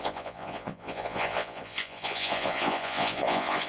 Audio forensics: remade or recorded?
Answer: remade